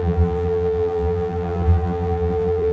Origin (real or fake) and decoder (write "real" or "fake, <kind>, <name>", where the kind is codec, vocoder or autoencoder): fake, vocoder, BigVGAN v2